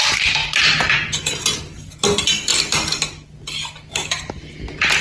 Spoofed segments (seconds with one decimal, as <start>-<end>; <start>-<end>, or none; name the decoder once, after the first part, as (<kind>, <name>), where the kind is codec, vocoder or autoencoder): 2.5-5.0 (vocoder, BigVGAN v2)